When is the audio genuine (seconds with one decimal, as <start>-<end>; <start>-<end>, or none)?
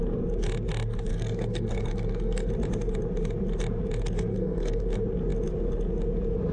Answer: 0.0-1.1; 2.5-4.3; 4.8-6.5